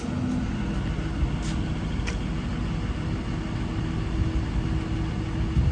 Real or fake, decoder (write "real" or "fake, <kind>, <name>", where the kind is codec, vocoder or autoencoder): real